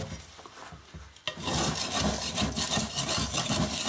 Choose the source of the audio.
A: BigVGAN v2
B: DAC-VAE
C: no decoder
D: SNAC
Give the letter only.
C